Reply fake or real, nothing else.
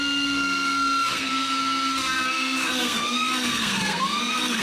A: fake